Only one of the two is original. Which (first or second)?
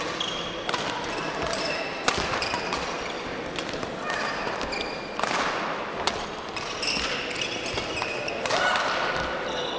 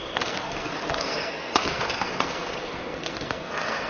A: first